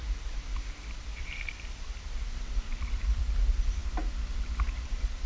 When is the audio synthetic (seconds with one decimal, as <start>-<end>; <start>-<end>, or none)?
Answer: 0.0-3.2; 3.8-5.3